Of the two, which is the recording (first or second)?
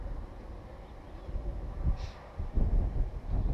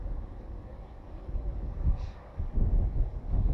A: first